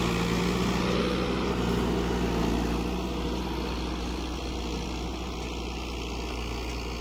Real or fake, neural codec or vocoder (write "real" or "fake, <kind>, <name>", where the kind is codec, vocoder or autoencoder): real